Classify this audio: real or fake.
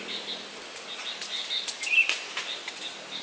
real